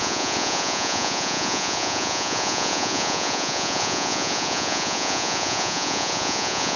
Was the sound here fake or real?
fake